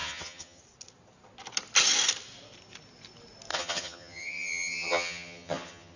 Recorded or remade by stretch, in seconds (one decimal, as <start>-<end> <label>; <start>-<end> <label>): 0.0-0.6 remade; 0.6-3.5 recorded; 3.5-6.0 remade